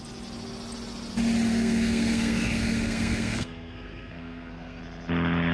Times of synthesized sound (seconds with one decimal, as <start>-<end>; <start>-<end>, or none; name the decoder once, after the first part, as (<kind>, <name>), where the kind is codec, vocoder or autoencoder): 1.5-4.8 (codec, SNAC)

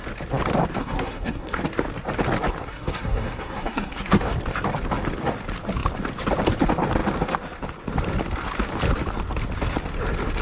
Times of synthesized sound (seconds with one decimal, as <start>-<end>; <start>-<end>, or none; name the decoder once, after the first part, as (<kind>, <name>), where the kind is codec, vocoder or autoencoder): 0.8-1.6 (codec, SNAC); 2.6-4.2

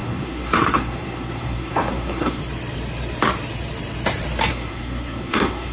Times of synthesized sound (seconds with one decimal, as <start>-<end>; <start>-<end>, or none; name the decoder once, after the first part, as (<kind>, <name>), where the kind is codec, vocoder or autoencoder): 0.0-2.4 (codec, SNAC); 4.5-5.7

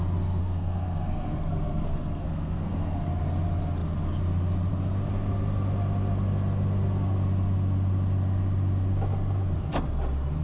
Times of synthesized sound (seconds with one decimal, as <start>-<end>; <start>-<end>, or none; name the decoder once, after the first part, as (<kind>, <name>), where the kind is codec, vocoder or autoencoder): 0.4-3.1 (codec, SNAC)

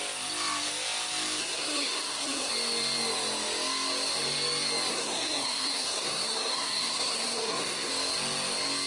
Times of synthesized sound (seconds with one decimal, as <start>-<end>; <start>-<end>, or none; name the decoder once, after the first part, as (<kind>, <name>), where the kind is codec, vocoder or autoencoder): 1.4-2.5 (codec, SNAC); 4.9-7.9

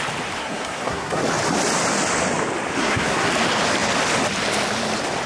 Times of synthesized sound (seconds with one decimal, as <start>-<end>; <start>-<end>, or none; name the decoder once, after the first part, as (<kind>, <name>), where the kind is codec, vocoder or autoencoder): 0.4-1.2 (codec, SNAC); 2.8-3.3